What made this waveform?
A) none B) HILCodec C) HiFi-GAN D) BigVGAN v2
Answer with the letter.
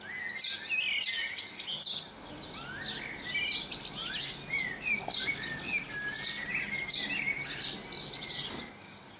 A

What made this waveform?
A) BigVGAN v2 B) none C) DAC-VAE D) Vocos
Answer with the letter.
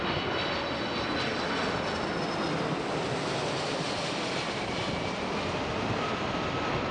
B